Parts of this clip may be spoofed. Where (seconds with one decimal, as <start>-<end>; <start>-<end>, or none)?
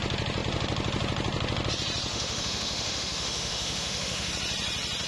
2.1-4.3